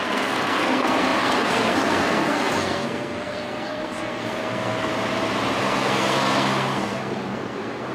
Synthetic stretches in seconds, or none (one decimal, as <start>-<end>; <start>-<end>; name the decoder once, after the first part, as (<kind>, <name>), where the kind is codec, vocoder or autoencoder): 0.0-4.9 (codec, SNAC); 5.6-7.9